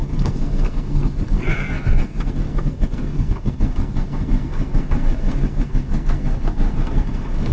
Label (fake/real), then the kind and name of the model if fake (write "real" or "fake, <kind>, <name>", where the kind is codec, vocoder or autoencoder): fake, codec, SNAC